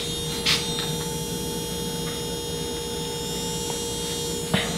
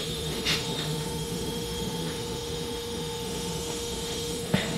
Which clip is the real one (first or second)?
first